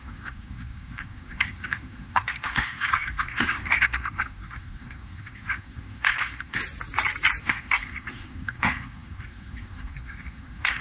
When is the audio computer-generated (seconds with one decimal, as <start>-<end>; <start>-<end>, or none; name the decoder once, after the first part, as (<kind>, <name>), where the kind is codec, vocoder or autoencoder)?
0.0-6.6 (codec, SNAC); 7.4-10.8